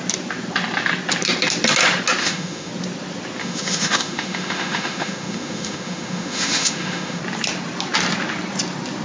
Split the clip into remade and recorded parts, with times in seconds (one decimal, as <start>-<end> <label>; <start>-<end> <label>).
0.0-2.2 recorded; 2.2-2.7 remade; 2.7-3.4 recorded; 3.4-7.2 remade; 7.2-9.0 recorded